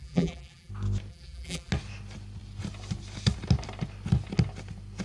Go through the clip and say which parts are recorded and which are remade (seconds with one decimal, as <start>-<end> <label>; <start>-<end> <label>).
0.0-0.7 remade; 0.7-1.1 recorded; 1.1-1.7 remade; 1.7-5.0 recorded